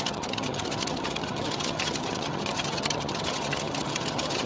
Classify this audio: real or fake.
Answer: fake